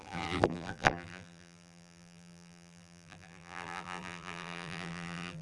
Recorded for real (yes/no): no